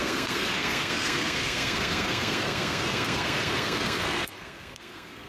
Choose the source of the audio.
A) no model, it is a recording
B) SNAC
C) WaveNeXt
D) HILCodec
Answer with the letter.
B